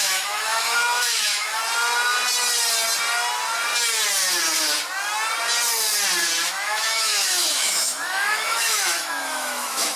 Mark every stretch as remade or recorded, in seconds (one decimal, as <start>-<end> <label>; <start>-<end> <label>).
0.0-1.6 remade; 1.6-6.5 recorded; 6.5-10.0 remade